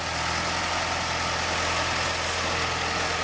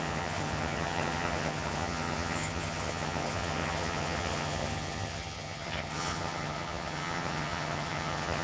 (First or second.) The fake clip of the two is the second